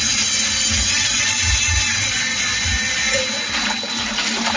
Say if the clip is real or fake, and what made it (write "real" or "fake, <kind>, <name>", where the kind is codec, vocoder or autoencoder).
real